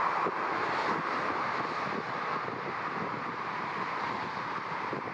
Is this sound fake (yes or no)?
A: no